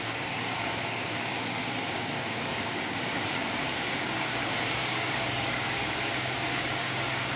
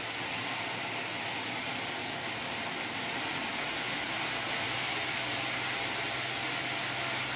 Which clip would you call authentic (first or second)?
second